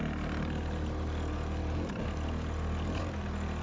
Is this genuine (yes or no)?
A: yes